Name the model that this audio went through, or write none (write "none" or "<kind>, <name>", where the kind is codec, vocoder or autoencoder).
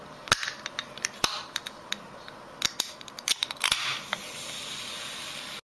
none